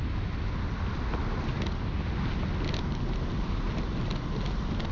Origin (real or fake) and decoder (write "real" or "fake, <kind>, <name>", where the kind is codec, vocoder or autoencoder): real